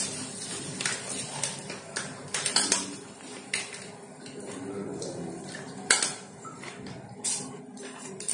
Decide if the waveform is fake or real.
real